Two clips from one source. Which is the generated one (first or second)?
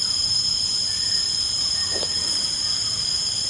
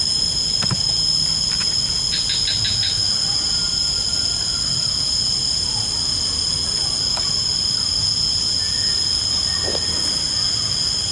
first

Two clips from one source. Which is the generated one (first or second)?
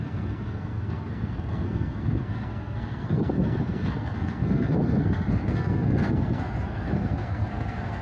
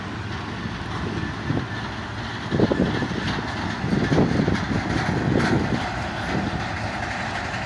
first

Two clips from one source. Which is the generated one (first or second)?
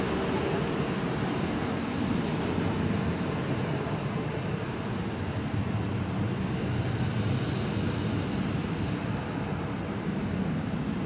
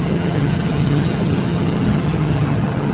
second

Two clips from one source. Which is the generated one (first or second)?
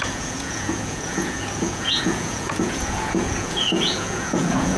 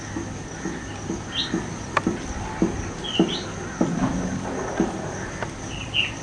first